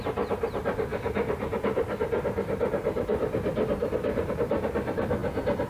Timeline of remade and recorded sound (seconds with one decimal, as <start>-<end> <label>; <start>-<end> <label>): 0.0-5.2 remade; 5.2-5.7 recorded